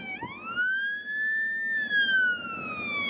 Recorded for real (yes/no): yes